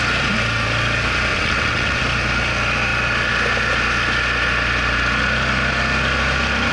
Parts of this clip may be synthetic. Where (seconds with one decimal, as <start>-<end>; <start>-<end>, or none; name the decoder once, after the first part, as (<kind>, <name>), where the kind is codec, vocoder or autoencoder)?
1.3-2.0 (vocoder, WaveNeXt)